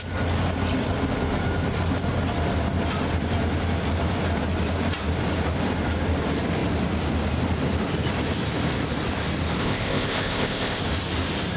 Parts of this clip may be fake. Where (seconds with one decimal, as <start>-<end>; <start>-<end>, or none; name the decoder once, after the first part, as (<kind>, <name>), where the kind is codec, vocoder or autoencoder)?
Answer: 9.6-10.8 (codec, ZipCodec)